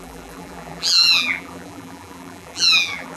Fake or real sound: fake